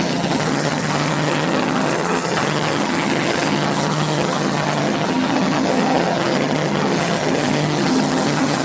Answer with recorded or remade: remade